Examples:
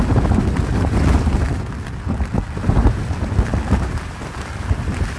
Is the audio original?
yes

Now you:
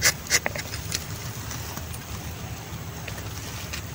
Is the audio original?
yes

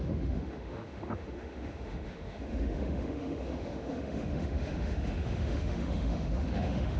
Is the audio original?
no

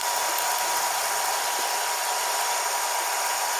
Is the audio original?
yes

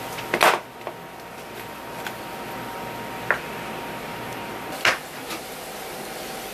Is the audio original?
yes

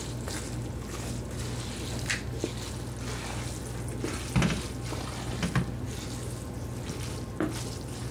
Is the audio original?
yes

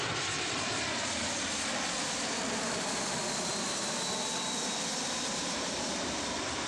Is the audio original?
no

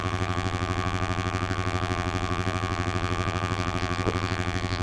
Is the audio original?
no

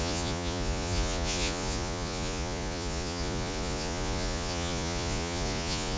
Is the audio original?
no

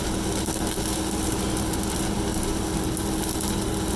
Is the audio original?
yes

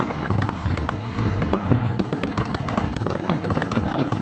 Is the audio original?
no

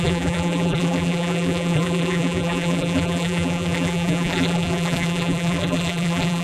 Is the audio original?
no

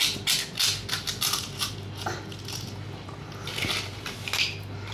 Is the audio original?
yes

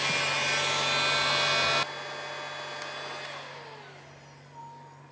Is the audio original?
yes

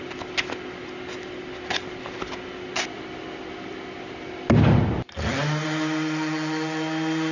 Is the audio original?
yes